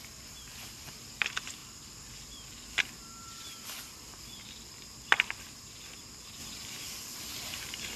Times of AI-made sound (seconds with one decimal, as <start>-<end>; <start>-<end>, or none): 1.6-5.6; 6.4-8.0